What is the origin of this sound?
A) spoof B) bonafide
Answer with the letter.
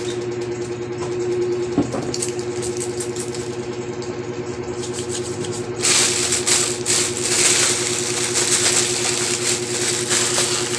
B